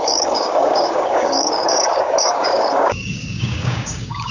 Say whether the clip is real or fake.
fake